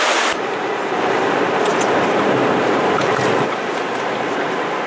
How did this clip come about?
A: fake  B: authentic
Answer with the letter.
A